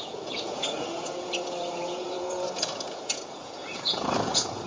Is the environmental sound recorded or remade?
remade